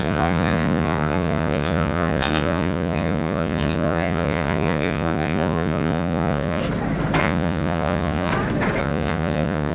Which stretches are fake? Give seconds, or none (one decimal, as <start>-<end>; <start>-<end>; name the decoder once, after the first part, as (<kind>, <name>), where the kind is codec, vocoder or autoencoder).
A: 0.0-6.6 (vocoder, Vocos); 7.2-8.3; 8.8-9.7